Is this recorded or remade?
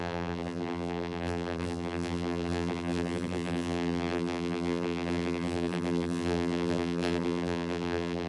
remade